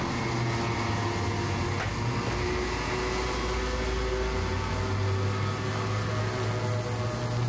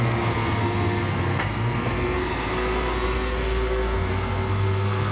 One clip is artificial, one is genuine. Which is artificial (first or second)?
second